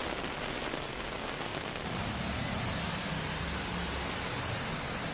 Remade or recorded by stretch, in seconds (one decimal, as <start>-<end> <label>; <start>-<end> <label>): 0.0-5.1 recorded